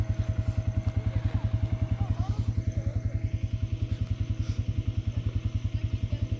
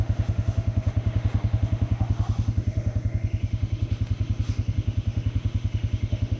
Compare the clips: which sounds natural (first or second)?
first